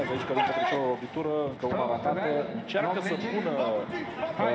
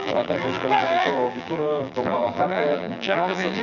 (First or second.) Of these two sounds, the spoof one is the second